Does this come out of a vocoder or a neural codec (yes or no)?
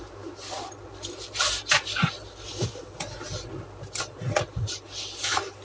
yes